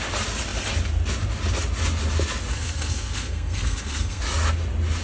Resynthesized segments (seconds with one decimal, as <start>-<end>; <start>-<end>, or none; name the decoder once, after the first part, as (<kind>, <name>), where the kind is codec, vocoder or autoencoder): 2.5-4.2 (codec, SNAC)